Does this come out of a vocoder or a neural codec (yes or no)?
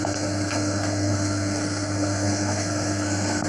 yes